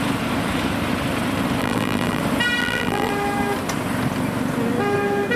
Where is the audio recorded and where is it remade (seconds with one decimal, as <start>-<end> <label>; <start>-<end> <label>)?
0.0-1.6 recorded; 1.6-2.2 remade; 2.2-2.6 recorded; 2.6-3.1 remade; 3.1-5.4 recorded